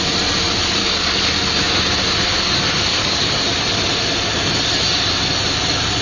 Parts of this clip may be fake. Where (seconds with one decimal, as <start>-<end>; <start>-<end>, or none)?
0.8-1.5; 2.9-3.4